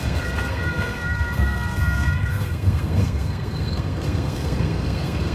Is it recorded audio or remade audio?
remade